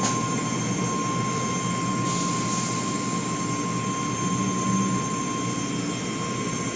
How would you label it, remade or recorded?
recorded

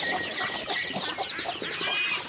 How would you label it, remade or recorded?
recorded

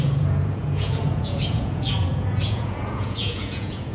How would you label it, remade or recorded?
remade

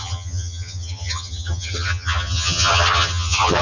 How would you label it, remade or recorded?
remade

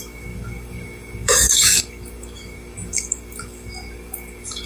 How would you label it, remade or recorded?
remade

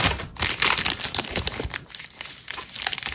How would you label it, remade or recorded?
recorded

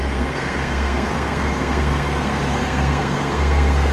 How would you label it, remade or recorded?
remade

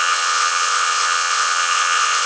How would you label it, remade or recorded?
remade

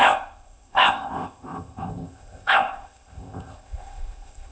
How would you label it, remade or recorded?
remade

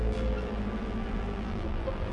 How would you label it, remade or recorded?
remade